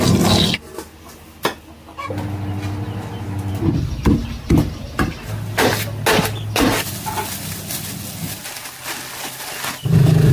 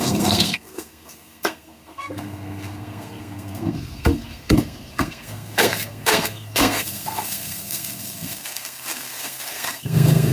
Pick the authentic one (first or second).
first